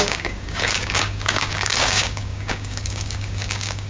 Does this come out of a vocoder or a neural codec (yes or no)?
yes